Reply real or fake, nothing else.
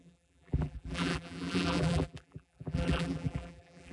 fake